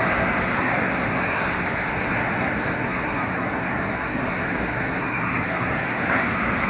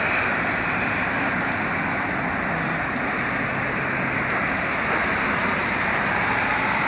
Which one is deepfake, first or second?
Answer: first